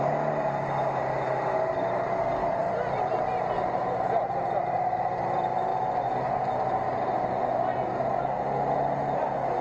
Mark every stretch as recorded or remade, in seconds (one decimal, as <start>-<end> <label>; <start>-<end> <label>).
0.0-2.4 recorded; 2.4-3.7 remade; 3.7-9.6 recorded